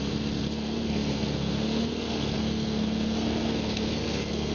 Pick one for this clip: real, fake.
fake